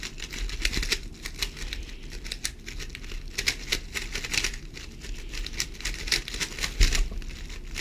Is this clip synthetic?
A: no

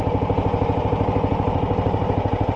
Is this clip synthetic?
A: yes